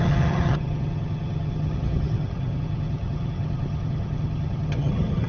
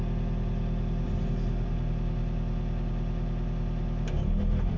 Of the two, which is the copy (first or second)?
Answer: first